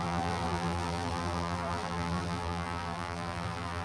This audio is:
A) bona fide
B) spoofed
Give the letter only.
B